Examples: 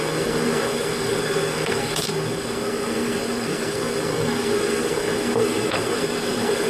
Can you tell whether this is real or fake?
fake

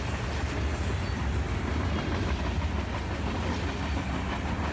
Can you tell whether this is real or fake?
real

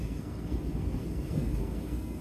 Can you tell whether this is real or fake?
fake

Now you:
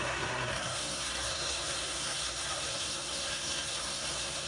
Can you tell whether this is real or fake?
fake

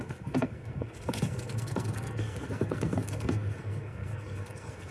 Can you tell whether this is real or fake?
fake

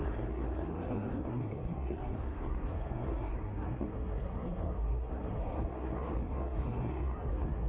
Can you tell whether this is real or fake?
fake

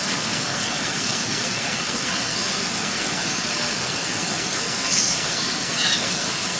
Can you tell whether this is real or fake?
fake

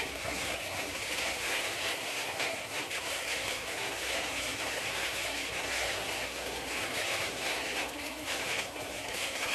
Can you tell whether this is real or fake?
fake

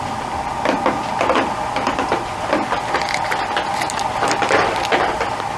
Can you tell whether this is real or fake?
real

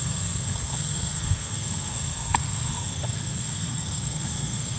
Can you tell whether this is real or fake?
fake